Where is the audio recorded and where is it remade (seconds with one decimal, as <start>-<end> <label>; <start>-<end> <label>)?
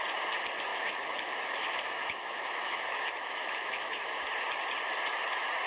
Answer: 0.0-0.7 recorded; 0.7-4.1 remade; 4.1-5.7 recorded